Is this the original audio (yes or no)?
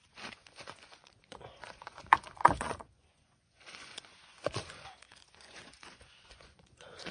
no